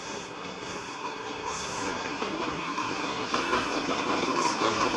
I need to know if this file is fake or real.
fake